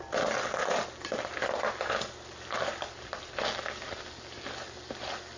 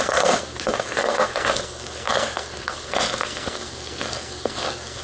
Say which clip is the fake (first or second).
second